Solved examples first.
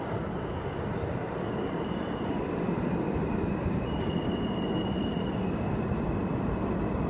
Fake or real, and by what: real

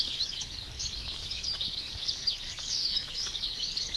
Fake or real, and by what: fake, codec, DAC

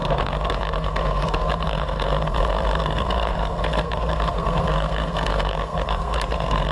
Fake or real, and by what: fake, codec, SNAC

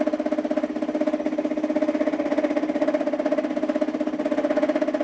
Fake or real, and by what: real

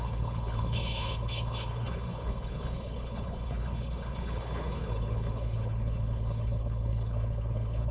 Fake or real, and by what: fake, codec, HILCodec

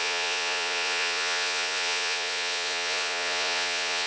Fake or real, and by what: fake, vocoder, Vocos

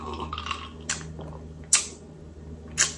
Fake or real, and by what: real